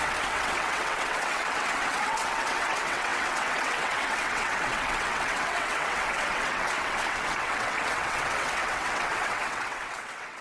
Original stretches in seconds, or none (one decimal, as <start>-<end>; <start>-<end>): none